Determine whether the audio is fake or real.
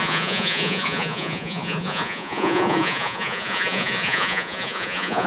fake